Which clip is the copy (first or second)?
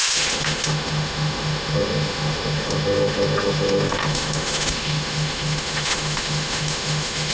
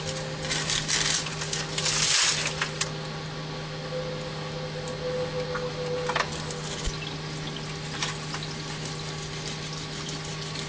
first